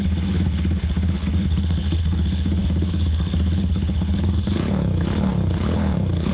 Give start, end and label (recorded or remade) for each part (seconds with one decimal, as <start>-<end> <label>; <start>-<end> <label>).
0.0-6.3 remade